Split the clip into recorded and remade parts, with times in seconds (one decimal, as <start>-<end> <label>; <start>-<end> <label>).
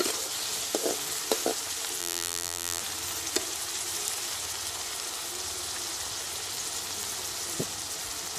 0.0-2.0 recorded; 2.0-2.8 remade; 2.8-8.4 recorded